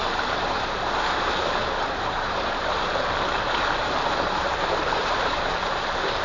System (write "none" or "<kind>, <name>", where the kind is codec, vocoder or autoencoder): vocoder, BigVGAN v2